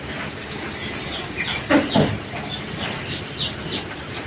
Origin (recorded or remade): recorded